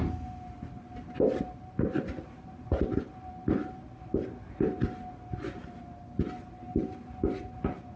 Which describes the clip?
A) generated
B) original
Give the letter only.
B